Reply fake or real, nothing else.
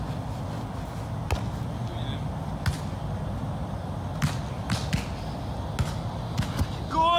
real